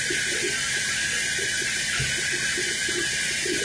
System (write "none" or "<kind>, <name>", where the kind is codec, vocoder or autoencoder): none